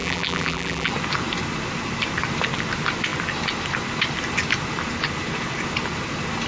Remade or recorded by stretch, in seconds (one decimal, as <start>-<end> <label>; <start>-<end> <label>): 0.0-0.9 remade; 0.9-6.5 recorded